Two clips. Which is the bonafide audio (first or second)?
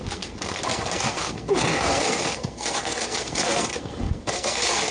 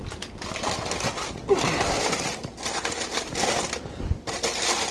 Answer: second